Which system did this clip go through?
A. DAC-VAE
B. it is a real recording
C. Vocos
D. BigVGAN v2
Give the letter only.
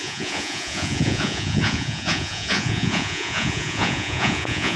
C